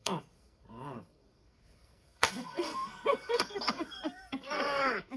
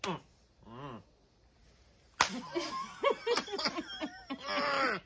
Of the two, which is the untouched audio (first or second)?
second